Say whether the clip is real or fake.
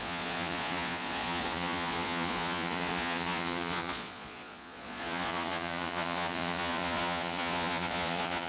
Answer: fake